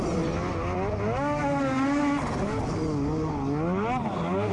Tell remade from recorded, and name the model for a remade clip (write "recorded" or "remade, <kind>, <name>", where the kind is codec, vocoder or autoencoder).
recorded